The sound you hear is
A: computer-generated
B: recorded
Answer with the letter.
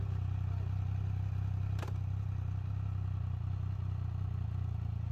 B